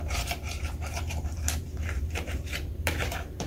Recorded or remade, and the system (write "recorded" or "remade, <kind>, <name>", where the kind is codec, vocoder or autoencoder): remade, vocoder, BigVGAN v2